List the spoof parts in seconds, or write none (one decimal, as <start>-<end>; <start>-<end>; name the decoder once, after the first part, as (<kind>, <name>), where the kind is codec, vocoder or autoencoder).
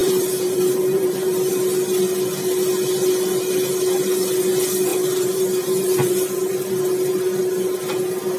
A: 0.0-1.5 (vocoder, BigVGAN v2); 4.9-6.8